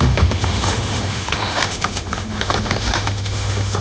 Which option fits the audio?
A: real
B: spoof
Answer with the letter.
B